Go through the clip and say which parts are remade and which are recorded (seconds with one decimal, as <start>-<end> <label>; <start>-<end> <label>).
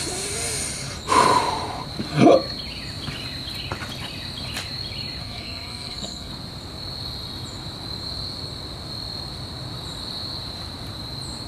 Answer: 0.0-5.2 recorded; 5.2-6.3 remade; 6.3-11.5 recorded